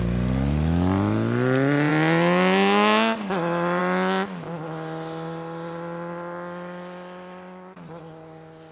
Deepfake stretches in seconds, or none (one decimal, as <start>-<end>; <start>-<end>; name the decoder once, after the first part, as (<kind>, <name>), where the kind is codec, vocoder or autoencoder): none